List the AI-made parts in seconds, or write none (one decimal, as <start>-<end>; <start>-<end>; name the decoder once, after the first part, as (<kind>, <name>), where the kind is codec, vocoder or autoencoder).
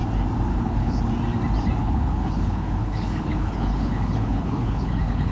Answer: 0.5-1.0 (codec, HILCodec); 1.8-5.3